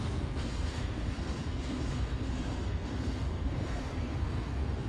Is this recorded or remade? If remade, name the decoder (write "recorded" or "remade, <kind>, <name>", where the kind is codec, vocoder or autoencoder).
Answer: remade, codec, SNAC